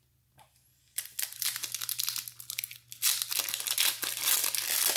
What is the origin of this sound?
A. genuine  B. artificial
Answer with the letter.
A